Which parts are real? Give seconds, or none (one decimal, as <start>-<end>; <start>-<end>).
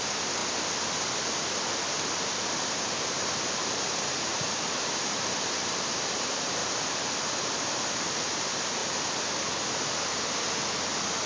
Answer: 0.4-2.0; 6.6-7.4; 8.8-10.9